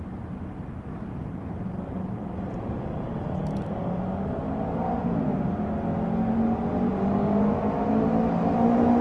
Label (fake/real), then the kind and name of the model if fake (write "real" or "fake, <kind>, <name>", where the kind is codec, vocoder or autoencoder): real